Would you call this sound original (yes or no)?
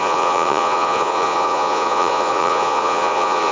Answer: no